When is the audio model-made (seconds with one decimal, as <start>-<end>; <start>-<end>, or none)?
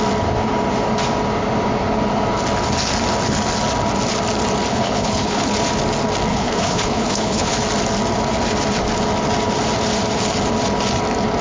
4.7-5.5; 6.3-7.5